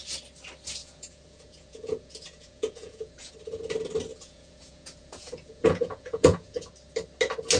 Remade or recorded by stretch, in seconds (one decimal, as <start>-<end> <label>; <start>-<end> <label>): 0.0-0.8 recorded; 0.8-3.3 remade; 3.3-4.1 recorded; 4.1-6.7 remade; 6.7-7.6 recorded